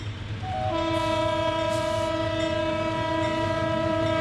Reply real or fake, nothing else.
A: fake